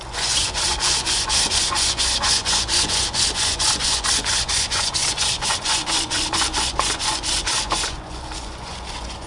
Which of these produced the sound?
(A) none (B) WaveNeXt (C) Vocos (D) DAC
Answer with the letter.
C